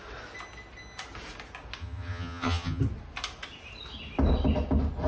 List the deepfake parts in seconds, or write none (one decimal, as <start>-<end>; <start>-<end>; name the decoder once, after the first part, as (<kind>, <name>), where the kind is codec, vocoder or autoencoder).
1.8-2.8 (vocoder, HiFi-GAN)